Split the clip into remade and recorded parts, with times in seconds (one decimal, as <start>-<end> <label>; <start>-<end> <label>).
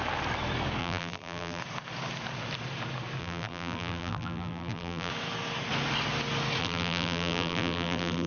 0.0-0.8 recorded; 0.8-1.6 remade; 1.6-3.2 recorded; 3.2-5.1 remade; 5.1-6.6 recorded; 6.6-8.3 remade